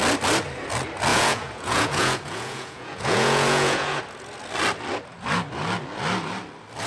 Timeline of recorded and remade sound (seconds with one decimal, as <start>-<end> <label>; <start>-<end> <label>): 0.0-1.1 recorded; 1.1-4.0 remade; 4.0-6.9 recorded